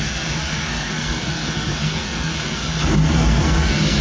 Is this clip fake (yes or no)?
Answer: yes